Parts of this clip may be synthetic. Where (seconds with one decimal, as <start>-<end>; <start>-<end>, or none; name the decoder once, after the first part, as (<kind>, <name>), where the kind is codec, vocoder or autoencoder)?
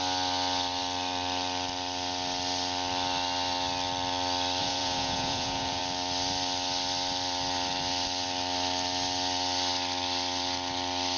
4.6-5.8 (vocoder, Vocos)